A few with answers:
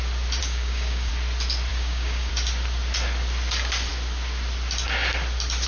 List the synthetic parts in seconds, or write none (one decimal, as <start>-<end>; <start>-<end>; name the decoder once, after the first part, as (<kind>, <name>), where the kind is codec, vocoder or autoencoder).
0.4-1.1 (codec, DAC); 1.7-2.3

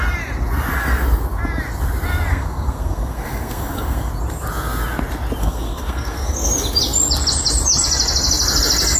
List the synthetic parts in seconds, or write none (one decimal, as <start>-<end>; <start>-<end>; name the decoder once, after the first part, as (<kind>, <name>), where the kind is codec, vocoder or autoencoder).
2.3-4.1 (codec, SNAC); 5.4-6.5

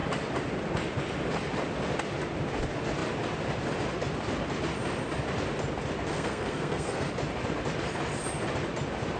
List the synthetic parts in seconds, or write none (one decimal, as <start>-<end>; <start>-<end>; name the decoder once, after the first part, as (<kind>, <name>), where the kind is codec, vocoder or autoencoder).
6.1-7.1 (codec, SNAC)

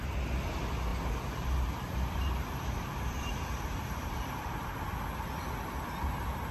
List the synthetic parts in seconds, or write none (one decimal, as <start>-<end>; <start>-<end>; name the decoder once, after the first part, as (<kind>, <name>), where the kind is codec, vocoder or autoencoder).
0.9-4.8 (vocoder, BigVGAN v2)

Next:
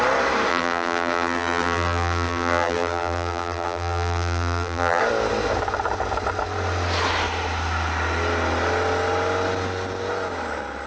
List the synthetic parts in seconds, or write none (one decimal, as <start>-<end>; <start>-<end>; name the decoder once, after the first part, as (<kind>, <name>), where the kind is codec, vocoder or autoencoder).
0.5-5.0 (vocoder, BigVGAN v2)